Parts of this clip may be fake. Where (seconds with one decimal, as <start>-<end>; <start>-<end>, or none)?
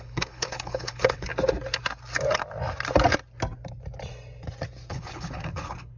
0.0-1.3; 4.9-6.0